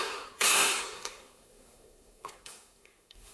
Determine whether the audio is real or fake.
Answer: fake